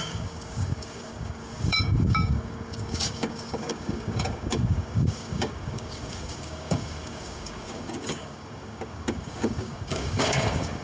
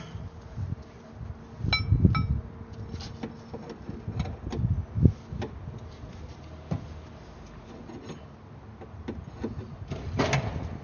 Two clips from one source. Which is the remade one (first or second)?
first